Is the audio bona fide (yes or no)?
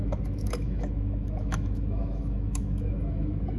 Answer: no